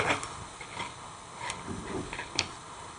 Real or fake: fake